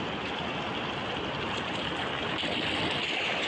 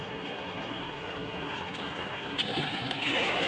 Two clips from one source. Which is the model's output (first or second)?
second